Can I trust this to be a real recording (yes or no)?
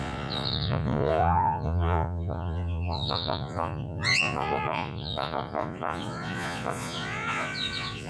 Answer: no